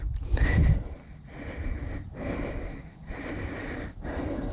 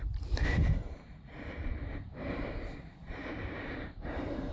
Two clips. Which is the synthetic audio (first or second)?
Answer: second